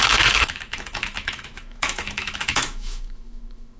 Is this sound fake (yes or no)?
yes